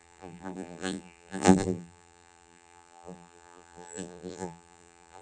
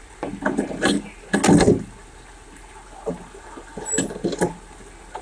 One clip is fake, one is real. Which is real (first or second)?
second